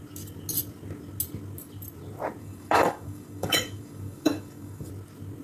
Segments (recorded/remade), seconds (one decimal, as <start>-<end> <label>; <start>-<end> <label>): 0.0-2.4 recorded; 2.4-4.9 remade; 4.9-5.4 recorded